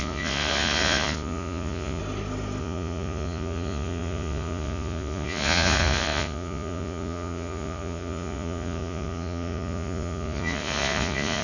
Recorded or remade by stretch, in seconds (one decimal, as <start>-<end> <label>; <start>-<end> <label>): 0.0-2.0 remade; 2.0-2.6 recorded; 2.6-11.4 remade